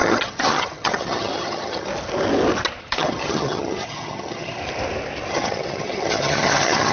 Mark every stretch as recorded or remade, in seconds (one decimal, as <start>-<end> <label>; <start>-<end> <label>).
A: 0.0-1.9 remade; 1.9-2.8 recorded; 2.8-4.6 remade; 4.6-5.3 recorded; 5.3-6.9 remade